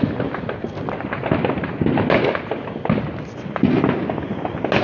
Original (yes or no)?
yes